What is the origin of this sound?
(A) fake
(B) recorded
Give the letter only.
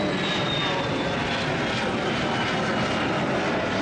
B